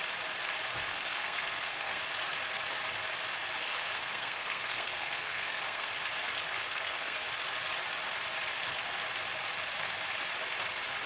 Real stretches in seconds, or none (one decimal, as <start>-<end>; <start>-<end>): 0.0-0.9; 2.0-3.7; 5.9-6.6; 7.2-11.1